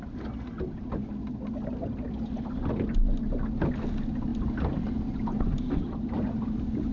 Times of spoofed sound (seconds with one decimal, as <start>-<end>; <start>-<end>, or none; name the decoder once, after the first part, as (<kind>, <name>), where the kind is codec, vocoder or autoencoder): none